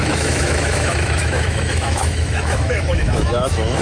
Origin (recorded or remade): remade